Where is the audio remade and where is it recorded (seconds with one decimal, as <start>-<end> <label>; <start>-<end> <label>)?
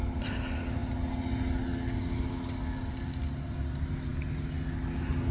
0.0-5.3 recorded